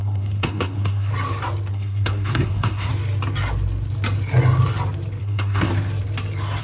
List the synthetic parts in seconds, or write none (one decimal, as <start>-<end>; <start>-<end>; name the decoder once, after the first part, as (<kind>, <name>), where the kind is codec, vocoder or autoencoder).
0.0-1.1 (codec, SNAC); 1.7-2.9; 5.2-5.7